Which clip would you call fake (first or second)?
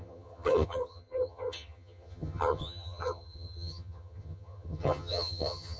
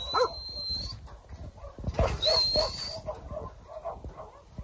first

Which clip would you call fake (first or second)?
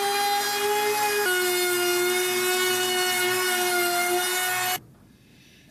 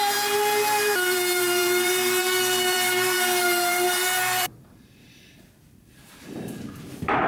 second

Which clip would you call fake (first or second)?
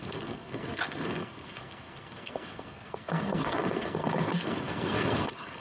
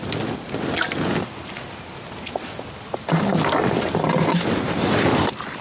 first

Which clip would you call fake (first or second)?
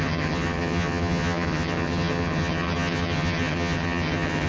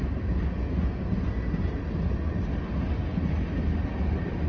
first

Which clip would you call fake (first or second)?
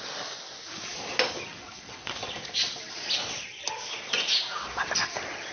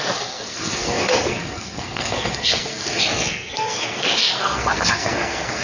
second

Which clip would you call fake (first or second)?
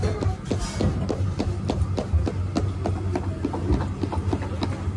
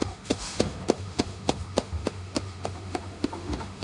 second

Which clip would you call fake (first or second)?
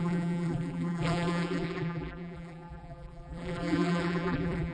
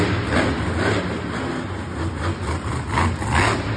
first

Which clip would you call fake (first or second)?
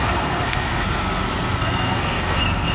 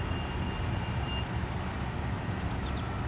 first